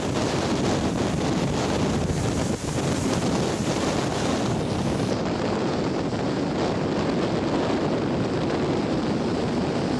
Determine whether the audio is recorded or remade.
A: recorded